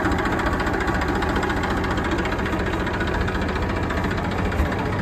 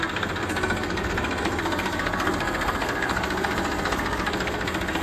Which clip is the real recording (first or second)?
first